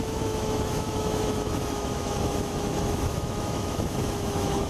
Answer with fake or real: fake